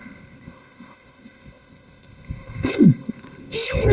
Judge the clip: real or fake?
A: fake